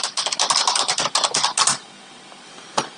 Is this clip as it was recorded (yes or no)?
yes